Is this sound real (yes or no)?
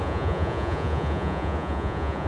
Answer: no